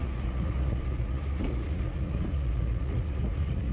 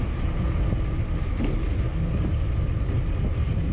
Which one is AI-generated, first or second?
first